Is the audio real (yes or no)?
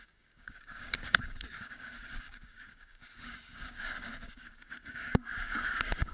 no